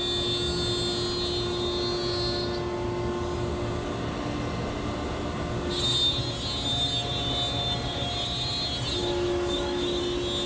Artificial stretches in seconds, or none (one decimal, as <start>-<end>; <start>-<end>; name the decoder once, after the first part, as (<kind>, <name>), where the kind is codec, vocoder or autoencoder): 9.0-10.0 (autoencoder, DAC-VAE)